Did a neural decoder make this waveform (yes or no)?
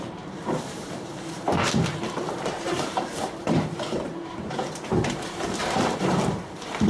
yes